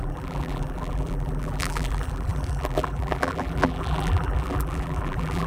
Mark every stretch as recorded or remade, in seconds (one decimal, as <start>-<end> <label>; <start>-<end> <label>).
0.0-5.5 remade